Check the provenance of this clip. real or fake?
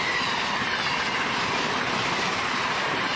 real